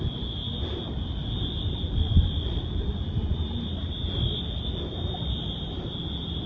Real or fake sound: real